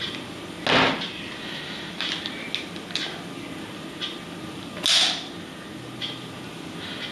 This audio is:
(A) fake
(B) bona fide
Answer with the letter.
B